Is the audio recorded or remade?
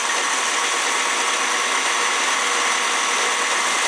recorded